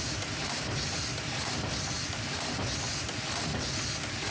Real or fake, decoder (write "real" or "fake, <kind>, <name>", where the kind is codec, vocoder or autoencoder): real